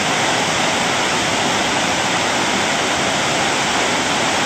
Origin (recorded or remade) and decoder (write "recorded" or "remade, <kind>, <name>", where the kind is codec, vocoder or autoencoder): recorded